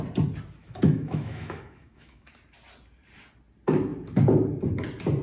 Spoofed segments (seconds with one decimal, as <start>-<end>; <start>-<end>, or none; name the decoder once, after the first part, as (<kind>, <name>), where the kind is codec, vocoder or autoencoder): 0.6-2.3 (autoencoder, DAC-VAE)